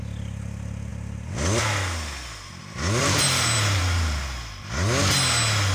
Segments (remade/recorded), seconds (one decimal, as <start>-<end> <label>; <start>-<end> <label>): 0.0-3.0 recorded; 3.0-4.2 remade; 4.2-5.7 recorded